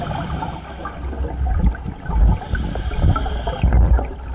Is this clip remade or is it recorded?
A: recorded